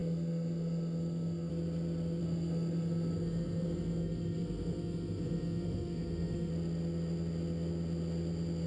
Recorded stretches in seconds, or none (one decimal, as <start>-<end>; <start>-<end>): 1.5-2.2; 6.5-8.7